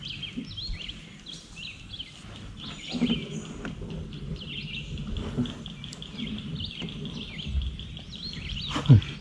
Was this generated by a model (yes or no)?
no